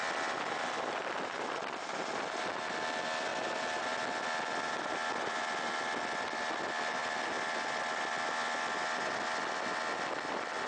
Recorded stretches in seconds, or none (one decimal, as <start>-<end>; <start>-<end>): 0.0-10.7